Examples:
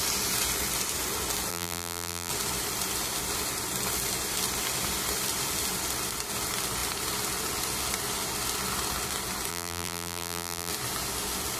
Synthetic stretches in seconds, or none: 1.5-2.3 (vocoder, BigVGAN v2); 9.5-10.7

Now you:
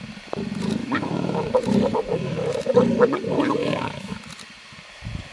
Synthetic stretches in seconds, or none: 0.8-1.5 (autoencoder, DAC-VAE); 2.1-2.7; 3.6-4.2

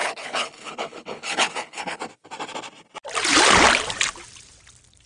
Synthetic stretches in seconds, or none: 0.0-2.0 (codec, HILCodec)

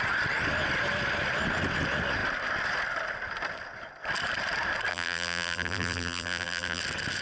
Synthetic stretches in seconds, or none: 4.9-6.8 (vocoder, BigVGAN v2)

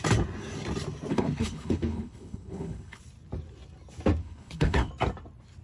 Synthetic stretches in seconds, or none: 1.1-3.0 (codec, HILCodec); 4.2-4.9

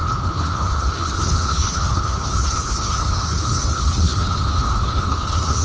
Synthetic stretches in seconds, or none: 0.0-5.6 (codec, HILCodec)

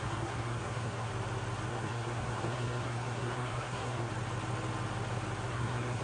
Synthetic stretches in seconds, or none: 0.0-1.1 (codec, SNAC); 1.7-4.1; 5.5-6.0